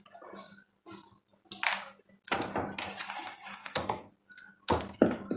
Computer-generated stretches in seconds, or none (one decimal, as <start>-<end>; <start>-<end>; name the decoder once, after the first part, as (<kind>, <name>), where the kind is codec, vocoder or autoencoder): 3.6-4.1 (codec, SNAC)